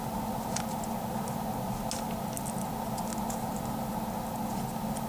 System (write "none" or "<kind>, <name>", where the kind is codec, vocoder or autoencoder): none